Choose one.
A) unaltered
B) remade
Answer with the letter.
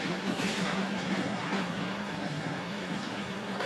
B